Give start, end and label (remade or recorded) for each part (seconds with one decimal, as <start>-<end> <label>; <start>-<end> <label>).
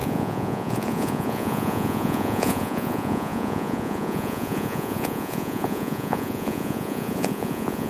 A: 0.0-7.9 remade